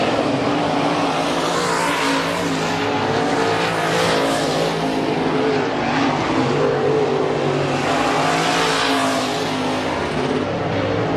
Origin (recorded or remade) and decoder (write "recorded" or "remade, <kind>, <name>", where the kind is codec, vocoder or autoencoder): recorded